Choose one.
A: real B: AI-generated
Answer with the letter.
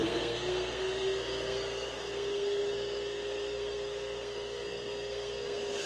B